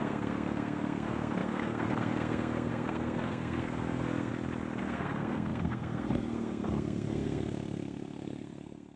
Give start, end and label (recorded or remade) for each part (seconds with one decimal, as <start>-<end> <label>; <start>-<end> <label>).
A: 0.0-4.3 remade; 4.3-4.8 recorded; 4.8-9.0 remade